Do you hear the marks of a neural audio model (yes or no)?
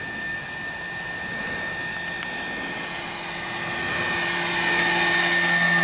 no